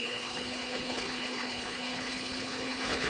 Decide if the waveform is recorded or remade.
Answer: remade